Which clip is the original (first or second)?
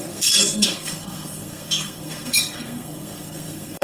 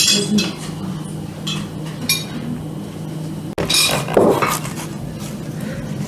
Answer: second